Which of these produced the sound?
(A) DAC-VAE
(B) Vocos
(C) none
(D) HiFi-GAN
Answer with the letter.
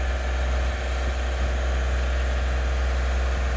C